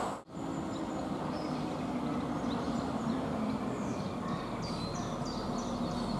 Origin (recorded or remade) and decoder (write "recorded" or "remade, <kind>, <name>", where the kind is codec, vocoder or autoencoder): recorded